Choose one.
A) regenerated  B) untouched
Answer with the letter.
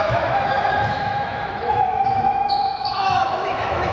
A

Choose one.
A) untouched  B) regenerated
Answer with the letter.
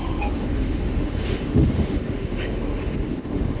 B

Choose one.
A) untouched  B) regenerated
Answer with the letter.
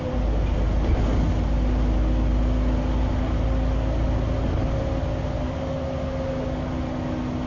A